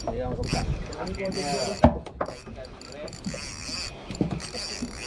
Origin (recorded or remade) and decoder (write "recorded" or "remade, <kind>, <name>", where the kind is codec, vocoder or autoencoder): recorded